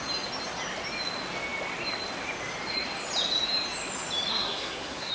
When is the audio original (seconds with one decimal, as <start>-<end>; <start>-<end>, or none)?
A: 0.0-4.3